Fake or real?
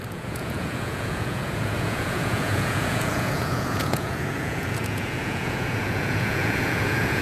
fake